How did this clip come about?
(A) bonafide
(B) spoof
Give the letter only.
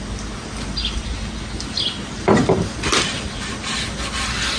A